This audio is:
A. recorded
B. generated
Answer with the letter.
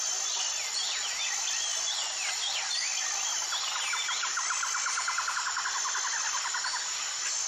A